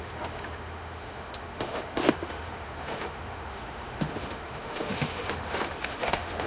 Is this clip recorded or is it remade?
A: remade